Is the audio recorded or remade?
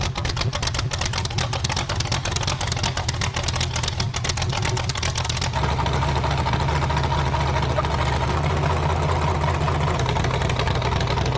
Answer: recorded